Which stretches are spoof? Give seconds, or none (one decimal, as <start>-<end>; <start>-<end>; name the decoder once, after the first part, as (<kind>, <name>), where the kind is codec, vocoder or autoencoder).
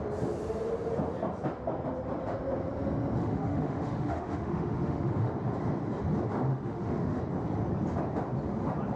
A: 3.2-5.3 (autoencoder, DAC-VAE); 6.5-7.2